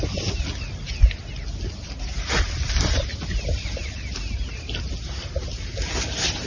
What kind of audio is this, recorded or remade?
recorded